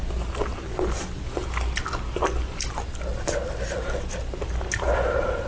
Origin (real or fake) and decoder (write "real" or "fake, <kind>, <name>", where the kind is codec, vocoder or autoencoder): real